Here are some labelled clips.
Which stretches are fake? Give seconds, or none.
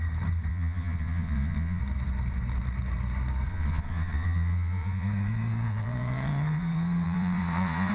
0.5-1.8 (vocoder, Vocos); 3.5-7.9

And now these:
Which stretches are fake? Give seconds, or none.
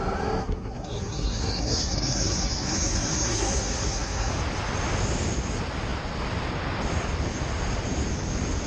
0.4-4.3 (codec, SNAC)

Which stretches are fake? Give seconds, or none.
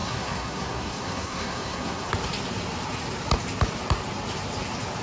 0.0-2.1 (codec, SNAC)